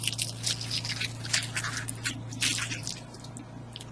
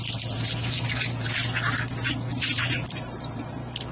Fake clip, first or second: second